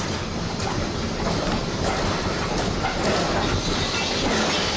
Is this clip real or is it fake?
real